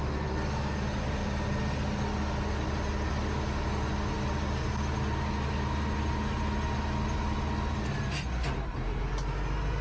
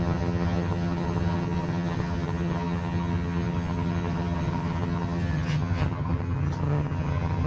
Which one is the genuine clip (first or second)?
first